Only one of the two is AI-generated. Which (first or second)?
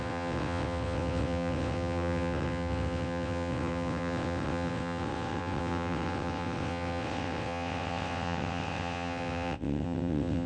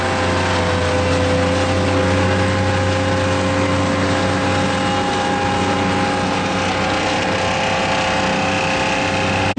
first